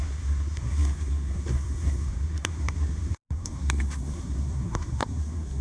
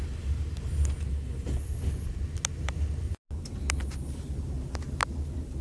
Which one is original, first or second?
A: second